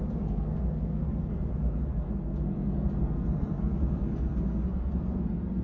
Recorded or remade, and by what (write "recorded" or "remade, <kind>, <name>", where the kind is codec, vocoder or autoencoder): remade, codec, SNAC